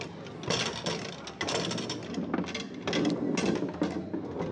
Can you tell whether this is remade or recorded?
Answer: recorded